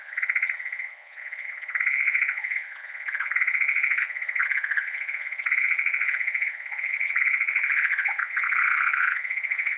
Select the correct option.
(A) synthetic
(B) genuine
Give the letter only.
A